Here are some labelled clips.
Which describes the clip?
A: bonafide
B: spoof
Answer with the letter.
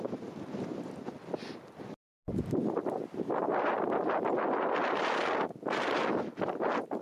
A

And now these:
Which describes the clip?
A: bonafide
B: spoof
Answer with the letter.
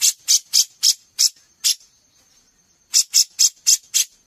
A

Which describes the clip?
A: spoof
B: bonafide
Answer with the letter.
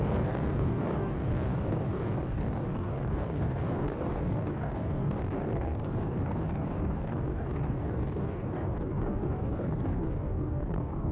A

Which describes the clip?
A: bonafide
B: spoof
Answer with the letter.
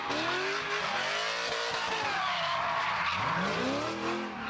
A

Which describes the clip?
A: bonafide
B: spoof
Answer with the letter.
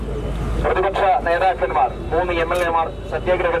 A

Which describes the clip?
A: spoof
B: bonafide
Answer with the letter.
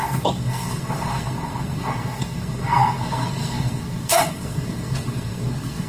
A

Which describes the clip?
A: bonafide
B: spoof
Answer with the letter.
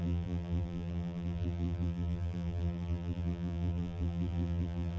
B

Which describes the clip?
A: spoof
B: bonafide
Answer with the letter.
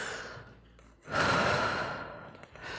B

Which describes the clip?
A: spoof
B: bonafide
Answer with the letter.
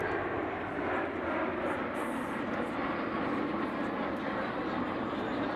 B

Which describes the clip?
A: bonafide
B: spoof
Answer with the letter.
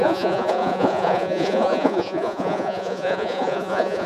B